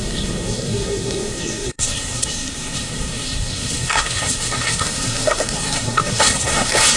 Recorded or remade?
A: remade